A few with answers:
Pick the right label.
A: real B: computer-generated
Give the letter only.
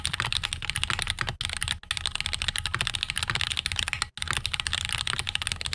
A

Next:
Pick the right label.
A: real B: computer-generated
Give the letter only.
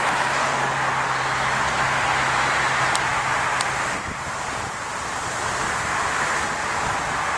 A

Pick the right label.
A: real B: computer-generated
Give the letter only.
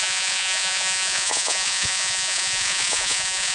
B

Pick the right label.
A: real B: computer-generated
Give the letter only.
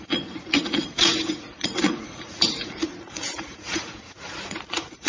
B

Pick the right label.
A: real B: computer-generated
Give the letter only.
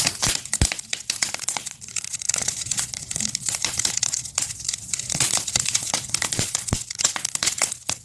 B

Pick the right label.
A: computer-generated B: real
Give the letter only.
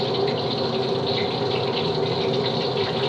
B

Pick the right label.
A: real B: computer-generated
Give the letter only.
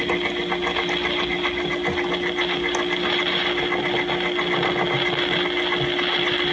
A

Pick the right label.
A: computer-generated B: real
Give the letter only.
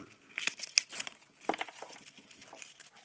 B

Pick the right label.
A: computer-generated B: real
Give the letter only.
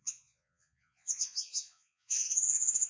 A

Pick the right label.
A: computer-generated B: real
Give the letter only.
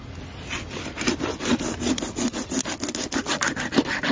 B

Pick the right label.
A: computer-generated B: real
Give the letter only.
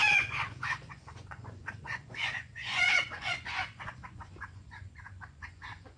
A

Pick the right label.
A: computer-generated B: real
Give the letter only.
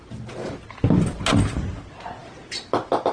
B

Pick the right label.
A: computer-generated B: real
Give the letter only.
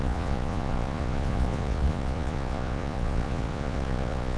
A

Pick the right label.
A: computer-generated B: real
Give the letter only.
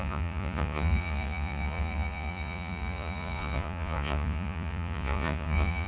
A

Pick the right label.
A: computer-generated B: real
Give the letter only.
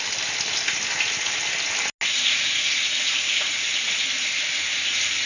B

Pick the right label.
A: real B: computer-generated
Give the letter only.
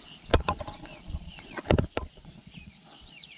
B